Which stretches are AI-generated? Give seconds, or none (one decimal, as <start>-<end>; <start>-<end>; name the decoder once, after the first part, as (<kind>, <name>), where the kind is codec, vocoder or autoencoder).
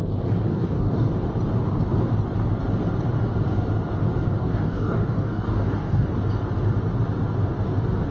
0.5-1.1 (codec, DAC); 4.4-6.1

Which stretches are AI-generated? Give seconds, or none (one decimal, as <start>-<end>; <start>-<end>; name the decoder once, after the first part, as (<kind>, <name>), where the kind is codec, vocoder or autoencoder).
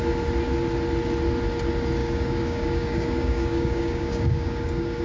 2.0-5.0 (codec, DAC)